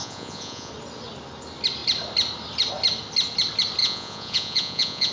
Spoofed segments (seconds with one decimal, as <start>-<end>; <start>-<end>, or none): 0.0-0.7; 3.8-5.1